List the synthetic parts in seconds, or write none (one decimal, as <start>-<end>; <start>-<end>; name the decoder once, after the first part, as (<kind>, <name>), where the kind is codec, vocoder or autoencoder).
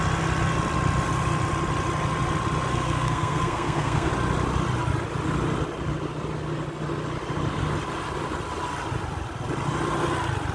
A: 2.7-4.1 (codec, SNAC)